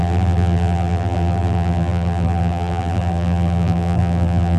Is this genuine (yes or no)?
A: no